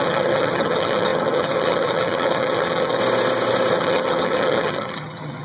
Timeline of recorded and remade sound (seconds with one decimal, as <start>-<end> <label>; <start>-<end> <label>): 0.0-3.0 remade; 3.0-3.7 recorded; 3.7-5.4 remade